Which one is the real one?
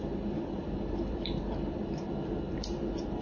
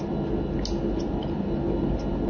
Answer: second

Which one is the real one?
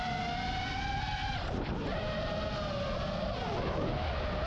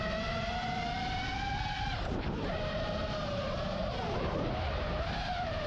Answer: first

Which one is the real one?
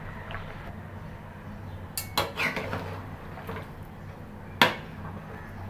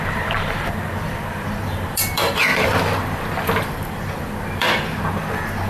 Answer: first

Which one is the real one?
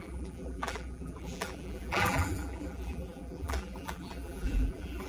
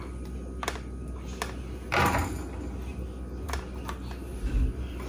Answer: second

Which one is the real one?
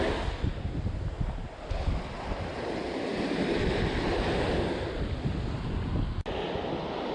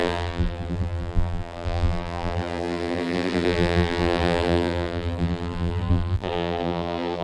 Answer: first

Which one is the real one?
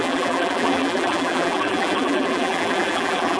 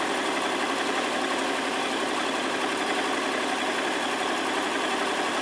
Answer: second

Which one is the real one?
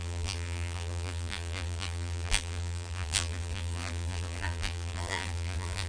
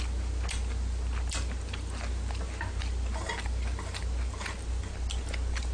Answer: second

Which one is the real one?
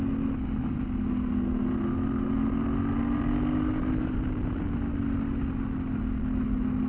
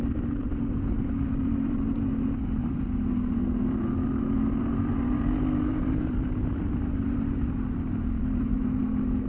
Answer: first